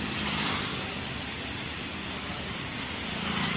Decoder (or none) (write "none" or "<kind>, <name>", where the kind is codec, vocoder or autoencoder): none